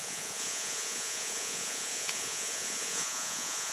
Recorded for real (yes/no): no